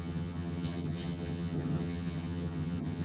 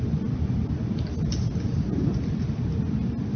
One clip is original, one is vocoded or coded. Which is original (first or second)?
second